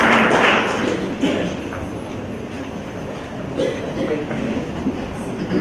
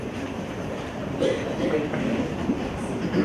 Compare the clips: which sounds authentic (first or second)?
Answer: first